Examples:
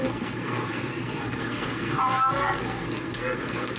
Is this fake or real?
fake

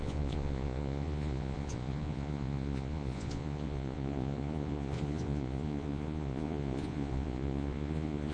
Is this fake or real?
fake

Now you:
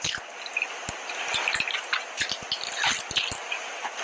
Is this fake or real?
real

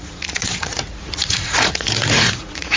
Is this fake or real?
fake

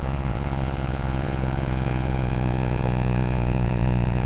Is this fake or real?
fake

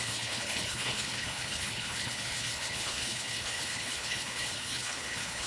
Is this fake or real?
fake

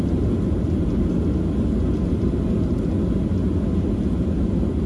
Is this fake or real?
real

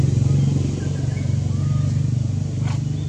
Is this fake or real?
real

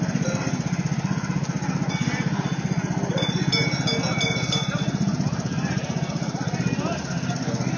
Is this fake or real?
real